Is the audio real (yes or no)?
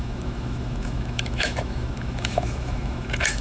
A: no